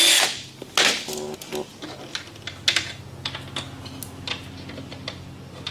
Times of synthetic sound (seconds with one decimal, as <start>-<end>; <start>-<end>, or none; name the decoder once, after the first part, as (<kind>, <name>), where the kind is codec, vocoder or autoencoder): none